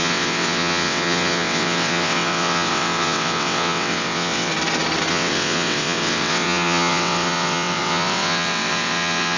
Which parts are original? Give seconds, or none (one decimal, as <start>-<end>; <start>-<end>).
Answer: 4.5-5.1